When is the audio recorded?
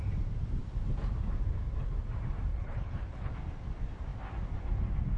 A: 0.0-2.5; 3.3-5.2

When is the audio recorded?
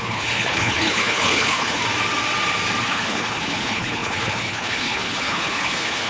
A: 1.8-2.8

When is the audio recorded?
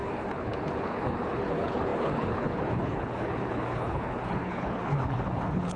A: none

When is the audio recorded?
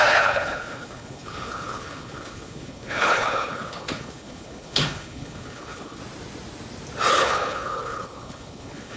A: 6.0-7.1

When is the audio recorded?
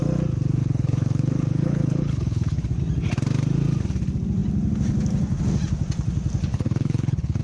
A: 0.0-0.6; 2.8-6.5